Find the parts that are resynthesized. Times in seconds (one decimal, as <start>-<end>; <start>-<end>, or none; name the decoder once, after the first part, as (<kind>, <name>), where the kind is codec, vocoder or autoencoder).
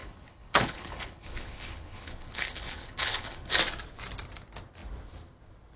0.0-3.5 (codec, HILCodec)